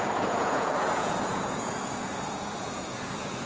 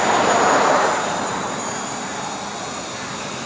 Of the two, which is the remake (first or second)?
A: first